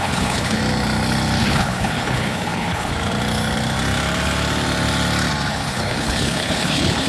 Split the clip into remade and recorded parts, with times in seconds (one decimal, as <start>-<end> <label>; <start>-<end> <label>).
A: 0.0-0.6 remade; 0.6-1.4 recorded; 1.4-2.9 remade; 2.9-5.5 recorded; 5.5-7.1 remade